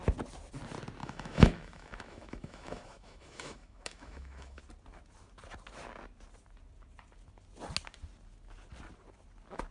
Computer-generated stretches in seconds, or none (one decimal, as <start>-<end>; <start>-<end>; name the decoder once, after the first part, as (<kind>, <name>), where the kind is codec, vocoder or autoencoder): 1.0-4.6 (autoencoder, DAC-VAE)